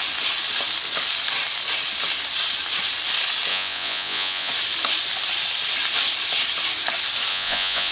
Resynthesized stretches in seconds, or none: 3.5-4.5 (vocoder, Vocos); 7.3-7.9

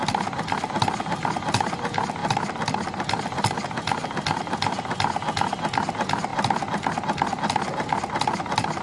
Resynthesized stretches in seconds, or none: none

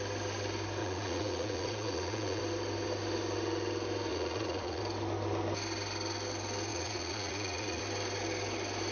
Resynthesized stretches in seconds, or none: 0.8-2.4 (vocoder, Vocos); 4.1-4.8; 6.7-7.8

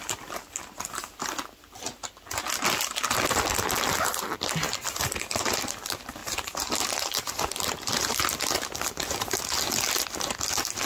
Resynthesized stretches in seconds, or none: none

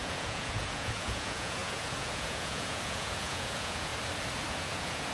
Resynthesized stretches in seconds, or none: 0.0-3.9 (vocoder, Vocos); 4.5-5.1